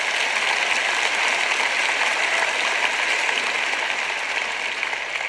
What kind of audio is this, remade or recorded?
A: recorded